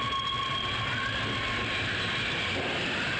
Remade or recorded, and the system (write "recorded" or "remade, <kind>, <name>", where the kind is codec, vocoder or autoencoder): recorded